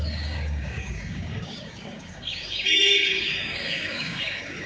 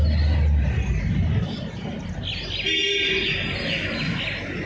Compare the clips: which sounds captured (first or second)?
second